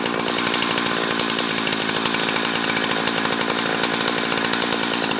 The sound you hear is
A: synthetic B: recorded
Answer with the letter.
B